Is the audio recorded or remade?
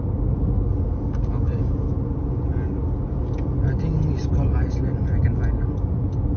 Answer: recorded